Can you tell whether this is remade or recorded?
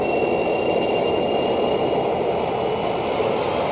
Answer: recorded